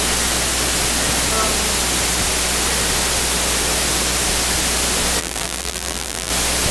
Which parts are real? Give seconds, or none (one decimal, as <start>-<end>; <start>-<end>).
0.0-5.2; 6.3-6.7